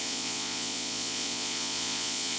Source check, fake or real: fake